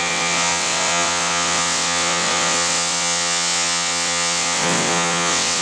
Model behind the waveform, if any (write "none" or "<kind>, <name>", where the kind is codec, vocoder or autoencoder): vocoder, WaveNeXt